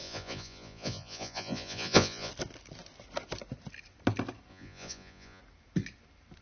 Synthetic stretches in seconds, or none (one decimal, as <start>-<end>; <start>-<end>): 0.0-2.3; 4.5-5.4